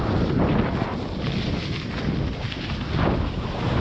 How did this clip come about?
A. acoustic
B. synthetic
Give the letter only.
A